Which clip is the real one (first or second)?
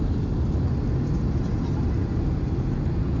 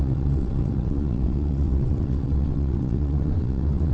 first